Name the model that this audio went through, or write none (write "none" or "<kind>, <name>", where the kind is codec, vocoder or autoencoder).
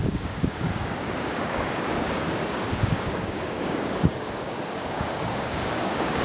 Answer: codec, DAC